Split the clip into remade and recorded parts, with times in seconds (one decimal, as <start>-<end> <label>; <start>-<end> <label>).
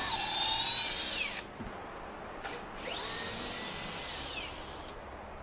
0.0-5.4 recorded